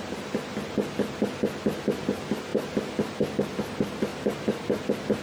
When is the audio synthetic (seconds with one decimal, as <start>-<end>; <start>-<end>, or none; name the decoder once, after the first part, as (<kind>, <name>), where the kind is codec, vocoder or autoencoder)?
4.1-4.8 (vocoder, BigVGAN v2)